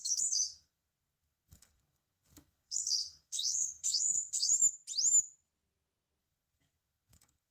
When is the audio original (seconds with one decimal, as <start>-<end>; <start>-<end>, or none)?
4.5-6.2